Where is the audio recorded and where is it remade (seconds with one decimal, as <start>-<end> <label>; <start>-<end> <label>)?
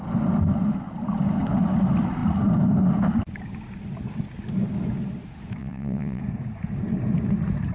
0.0-5.6 recorded; 5.6-6.2 remade; 6.2-7.7 recorded